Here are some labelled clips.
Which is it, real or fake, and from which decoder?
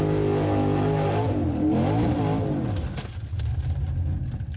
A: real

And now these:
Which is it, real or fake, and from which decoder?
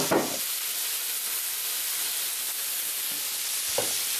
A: fake, vocoder, BigVGAN v2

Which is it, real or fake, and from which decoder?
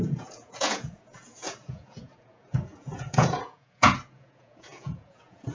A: fake, vocoder, Vocos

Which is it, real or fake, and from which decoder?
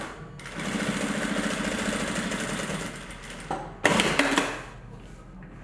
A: real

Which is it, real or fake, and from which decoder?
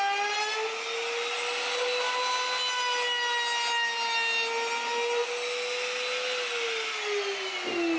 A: real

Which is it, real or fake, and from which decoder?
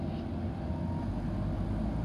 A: real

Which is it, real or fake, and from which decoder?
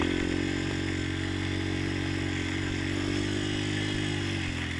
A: real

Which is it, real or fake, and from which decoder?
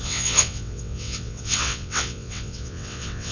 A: fake, vocoder, WaveNeXt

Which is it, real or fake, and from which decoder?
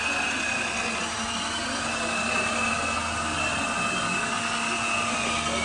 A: real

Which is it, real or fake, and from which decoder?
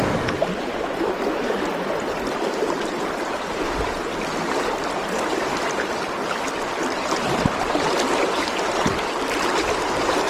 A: real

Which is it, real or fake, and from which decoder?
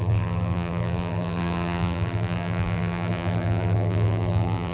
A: fake, vocoder, BigVGAN v2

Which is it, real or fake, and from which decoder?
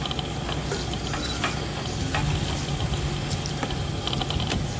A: real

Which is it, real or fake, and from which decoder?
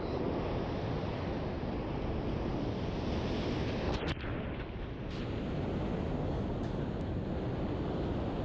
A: real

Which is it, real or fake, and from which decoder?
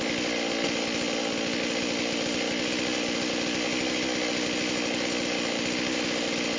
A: real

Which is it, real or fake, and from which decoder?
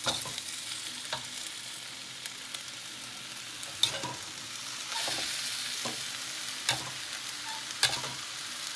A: real